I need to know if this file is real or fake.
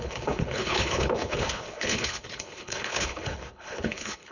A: fake